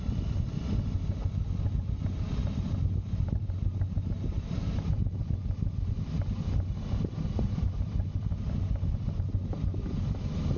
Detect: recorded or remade recorded